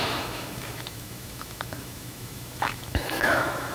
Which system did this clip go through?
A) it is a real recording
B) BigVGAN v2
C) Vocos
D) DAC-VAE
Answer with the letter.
D